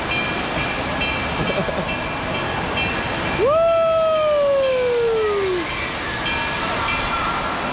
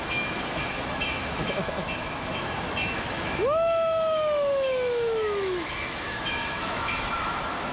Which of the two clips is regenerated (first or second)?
second